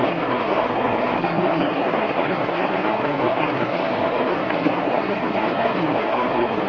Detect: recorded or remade remade